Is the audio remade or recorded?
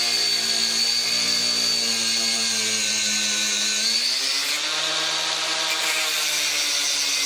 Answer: recorded